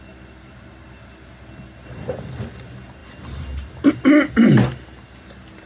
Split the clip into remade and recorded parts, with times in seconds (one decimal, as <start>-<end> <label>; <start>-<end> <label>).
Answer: 0.0-5.7 recorded